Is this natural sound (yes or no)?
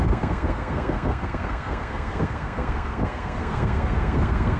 no